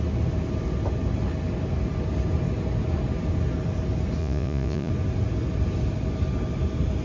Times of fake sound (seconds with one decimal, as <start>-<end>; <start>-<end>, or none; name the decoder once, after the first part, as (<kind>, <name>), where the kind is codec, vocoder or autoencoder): 4.2-4.9 (vocoder, Vocos)